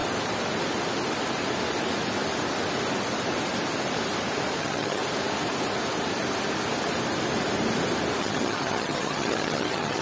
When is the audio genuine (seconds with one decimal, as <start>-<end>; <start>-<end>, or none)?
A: 0.0-4.6; 5.0-8.2